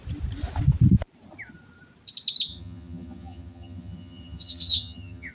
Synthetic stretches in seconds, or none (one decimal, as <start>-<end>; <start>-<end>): 2.5-5.3